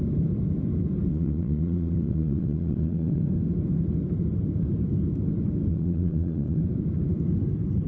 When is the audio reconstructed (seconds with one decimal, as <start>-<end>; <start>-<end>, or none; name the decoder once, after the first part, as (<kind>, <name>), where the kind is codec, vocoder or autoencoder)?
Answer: 1.1-3.2 (vocoder, Vocos); 5.7-6.6